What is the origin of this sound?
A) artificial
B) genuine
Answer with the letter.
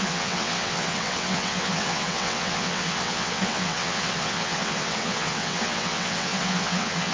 A